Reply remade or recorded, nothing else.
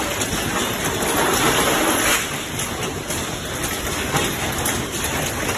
recorded